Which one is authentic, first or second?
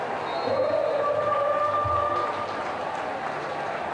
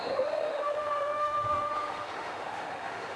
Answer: first